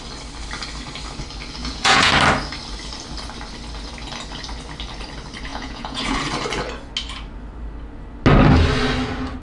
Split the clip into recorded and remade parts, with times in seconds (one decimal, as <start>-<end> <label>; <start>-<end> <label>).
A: 0.0-1.6 recorded; 1.6-2.1 remade; 2.1-5.5 recorded; 5.5-6.2 remade; 6.2-9.4 recorded